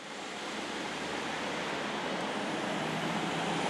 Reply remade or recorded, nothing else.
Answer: recorded